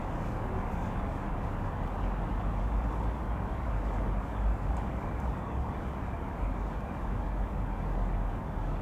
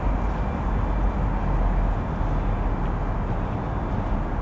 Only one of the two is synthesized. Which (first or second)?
first